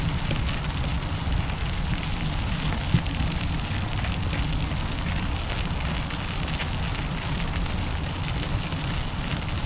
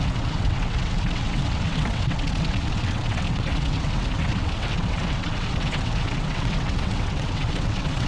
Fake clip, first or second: second